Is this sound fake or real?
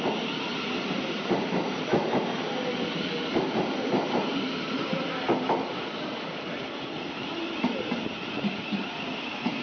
real